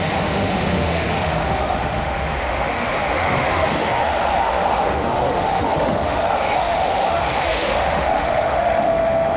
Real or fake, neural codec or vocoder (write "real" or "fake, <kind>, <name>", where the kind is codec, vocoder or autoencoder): fake, autoencoder, DAC-VAE